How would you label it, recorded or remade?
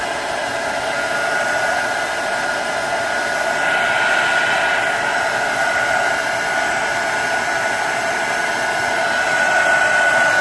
recorded